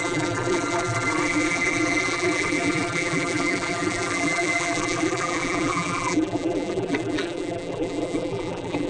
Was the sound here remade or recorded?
remade